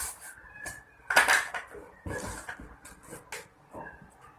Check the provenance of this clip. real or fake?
real